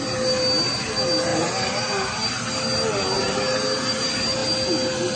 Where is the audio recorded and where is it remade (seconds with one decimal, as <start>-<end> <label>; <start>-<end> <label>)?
0.0-5.2 recorded